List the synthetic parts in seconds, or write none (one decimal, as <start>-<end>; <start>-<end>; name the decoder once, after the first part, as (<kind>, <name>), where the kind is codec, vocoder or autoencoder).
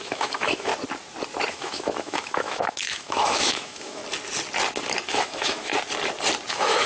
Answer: 0.0-0.7 (autoencoder, DAC-VAE); 1.5-4.0; 5.1-5.7; 6.5-6.9